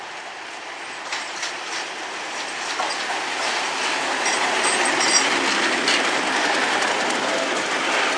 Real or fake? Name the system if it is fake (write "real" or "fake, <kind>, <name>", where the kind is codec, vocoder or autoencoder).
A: real